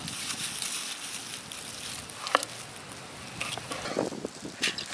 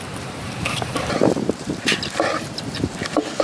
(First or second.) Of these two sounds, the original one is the first